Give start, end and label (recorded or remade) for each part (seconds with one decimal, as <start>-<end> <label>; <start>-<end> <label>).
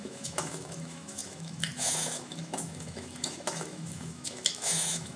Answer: 0.0-5.2 remade